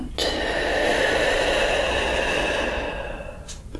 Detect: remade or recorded recorded